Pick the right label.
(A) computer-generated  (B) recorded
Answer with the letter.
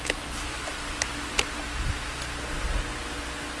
B